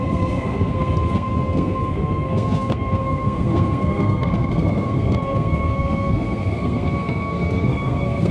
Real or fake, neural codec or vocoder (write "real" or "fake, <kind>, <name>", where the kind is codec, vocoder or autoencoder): fake, codec, SNAC